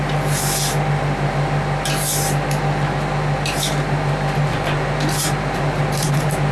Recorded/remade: recorded